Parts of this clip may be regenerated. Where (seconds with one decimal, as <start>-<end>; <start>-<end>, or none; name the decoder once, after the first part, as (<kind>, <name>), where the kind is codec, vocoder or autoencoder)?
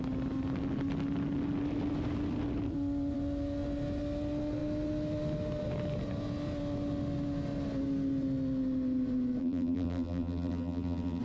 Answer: 9.4-11.2 (vocoder, BigVGAN v2)